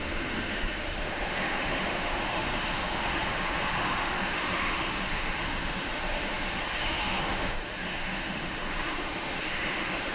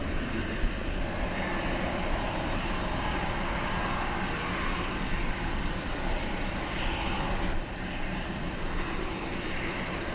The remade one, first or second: first